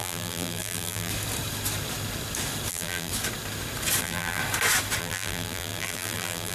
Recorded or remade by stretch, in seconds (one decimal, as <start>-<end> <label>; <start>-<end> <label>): 0.0-1.1 remade; 1.1-2.7 recorded; 2.7-3.1 remade; 3.1-4.0 recorded; 4.0-4.4 remade; 4.4-5.0 recorded; 5.0-6.5 remade